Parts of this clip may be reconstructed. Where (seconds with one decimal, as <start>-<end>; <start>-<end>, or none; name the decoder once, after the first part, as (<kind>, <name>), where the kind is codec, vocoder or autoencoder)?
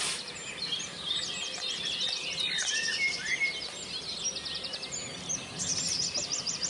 none